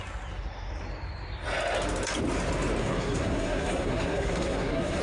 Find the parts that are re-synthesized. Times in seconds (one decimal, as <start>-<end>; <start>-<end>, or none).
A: 2.8-5.0